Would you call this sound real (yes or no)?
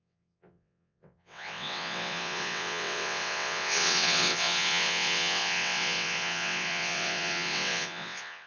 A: no